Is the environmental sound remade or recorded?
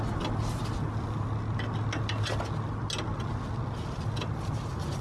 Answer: recorded